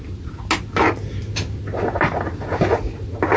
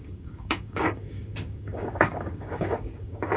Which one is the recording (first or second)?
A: first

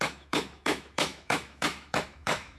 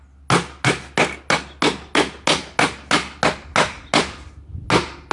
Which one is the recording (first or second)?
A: second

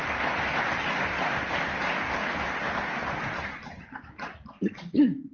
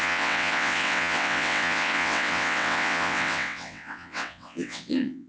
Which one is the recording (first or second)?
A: first